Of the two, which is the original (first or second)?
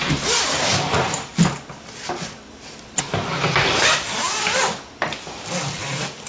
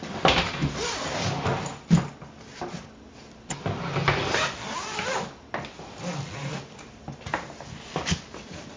second